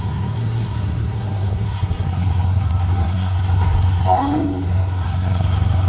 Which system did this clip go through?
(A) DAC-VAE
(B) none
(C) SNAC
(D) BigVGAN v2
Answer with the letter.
C